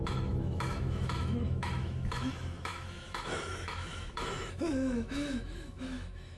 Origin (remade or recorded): remade